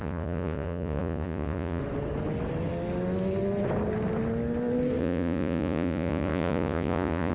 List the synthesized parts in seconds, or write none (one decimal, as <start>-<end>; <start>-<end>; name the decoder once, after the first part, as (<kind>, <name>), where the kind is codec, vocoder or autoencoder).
0.0-1.8 (vocoder, Vocos); 5.0-7.3